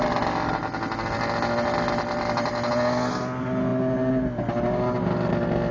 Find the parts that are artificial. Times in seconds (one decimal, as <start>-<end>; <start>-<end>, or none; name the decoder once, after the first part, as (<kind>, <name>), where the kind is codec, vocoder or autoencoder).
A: none